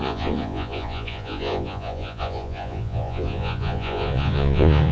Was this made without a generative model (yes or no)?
no